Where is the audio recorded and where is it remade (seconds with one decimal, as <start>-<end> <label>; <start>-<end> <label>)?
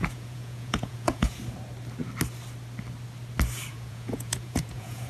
0.0-1.4 remade; 1.4-3.7 recorded; 3.7-5.1 remade